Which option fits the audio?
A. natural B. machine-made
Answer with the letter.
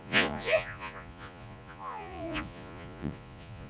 B